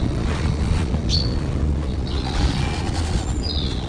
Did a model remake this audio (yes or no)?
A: yes